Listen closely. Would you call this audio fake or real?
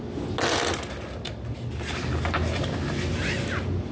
real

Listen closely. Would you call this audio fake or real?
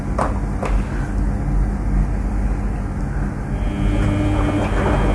real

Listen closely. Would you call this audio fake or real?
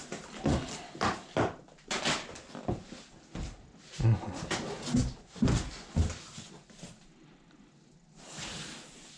real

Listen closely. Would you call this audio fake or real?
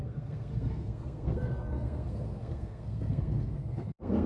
fake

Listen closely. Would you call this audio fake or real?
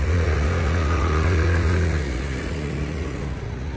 fake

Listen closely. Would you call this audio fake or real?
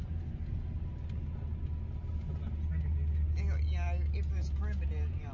real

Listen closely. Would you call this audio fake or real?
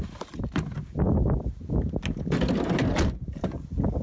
real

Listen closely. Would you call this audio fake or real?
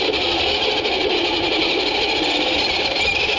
real